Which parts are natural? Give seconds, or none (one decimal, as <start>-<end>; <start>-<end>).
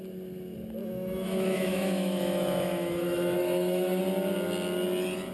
0.0-0.8; 4.0-5.3